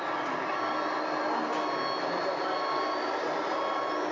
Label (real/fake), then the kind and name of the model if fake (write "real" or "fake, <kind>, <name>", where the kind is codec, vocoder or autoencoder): real